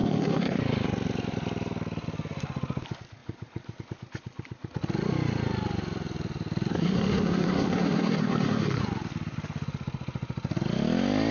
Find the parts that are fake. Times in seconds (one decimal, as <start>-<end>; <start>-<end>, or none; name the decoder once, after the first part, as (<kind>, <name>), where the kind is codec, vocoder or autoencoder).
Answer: 0.0-0.6 (codec, SNAC); 6.7-8.8